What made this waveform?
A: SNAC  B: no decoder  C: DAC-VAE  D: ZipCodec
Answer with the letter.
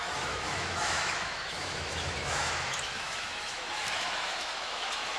C